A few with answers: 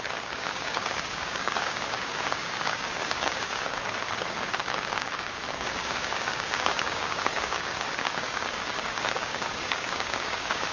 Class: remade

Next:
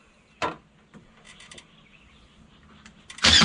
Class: remade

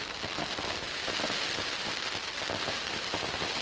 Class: recorded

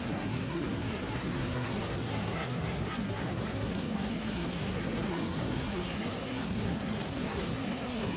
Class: remade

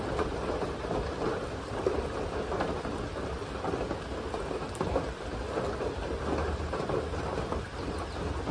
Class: recorded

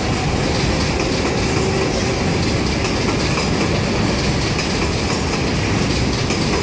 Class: recorded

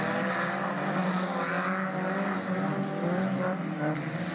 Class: recorded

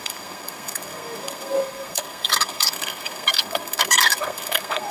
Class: remade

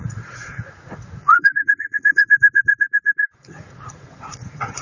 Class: remade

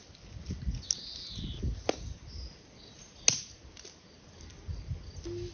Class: recorded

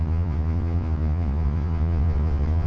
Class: remade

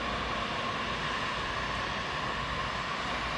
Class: recorded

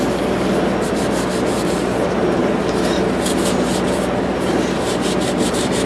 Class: recorded